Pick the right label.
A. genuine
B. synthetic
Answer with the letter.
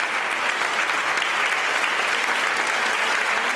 A